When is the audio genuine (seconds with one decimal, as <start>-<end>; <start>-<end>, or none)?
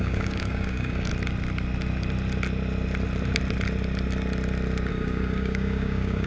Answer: 1.1-4.9